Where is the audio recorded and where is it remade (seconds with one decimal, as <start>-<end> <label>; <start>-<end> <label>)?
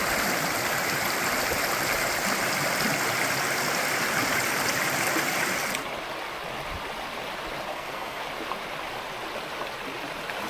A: 0.0-7.7 recorded; 7.7-8.2 remade; 8.2-10.5 recorded